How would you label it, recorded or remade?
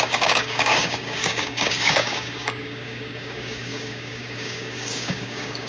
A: remade